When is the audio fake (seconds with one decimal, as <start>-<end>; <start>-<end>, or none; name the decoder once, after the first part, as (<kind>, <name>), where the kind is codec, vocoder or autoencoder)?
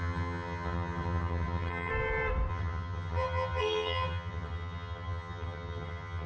0.0-1.9 (vocoder, HiFi-GAN); 2.5-6.3